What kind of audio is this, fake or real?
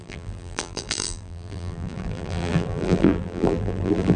fake